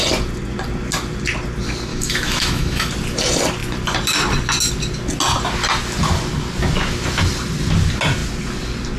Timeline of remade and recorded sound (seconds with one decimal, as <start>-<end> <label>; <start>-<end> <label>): 0.0-1.9 recorded; 1.9-2.9 remade; 2.9-9.0 recorded